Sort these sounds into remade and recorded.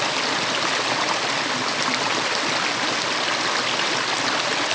recorded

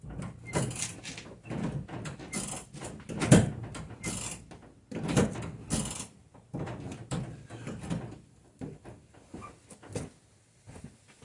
recorded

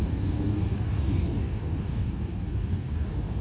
remade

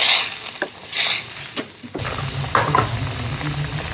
recorded